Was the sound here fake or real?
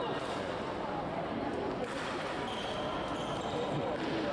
real